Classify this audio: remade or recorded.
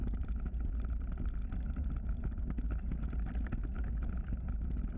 recorded